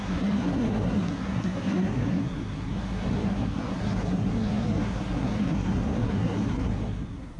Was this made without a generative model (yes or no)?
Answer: no